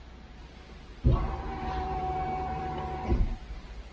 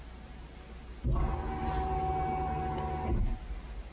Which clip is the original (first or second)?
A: second